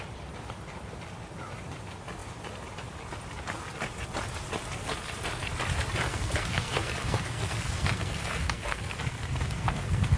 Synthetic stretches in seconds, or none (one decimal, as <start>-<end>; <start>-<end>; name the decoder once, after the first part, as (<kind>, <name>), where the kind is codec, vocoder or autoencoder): 6.1-10.2 (codec, SNAC)